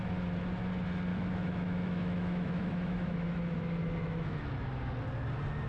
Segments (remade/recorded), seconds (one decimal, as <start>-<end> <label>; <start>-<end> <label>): 0.0-1.1 recorded; 1.1-4.5 remade; 4.5-5.7 recorded

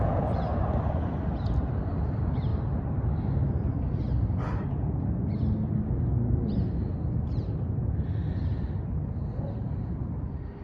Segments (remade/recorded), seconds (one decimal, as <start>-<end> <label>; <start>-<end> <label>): 0.0-10.6 recorded

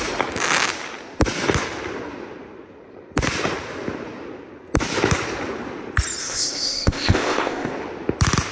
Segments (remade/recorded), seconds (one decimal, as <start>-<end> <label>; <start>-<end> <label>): 0.0-6.2 recorded; 6.2-7.7 remade; 7.7-8.5 recorded

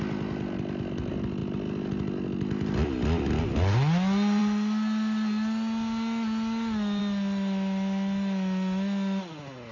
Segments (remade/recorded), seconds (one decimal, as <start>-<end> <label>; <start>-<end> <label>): 0.0-9.7 recorded

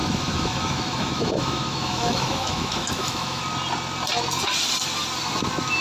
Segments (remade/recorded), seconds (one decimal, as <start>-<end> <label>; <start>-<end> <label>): 0.0-3.4 remade; 3.4-5.8 recorded